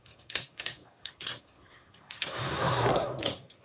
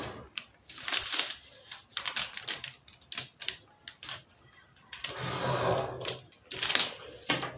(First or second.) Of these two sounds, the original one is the second